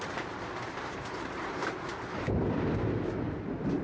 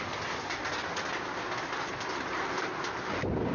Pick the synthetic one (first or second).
first